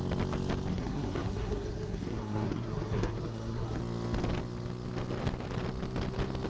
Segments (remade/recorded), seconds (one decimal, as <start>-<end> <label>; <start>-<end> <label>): 0.0-0.7 recorded; 0.7-3.8 remade; 3.8-6.5 recorded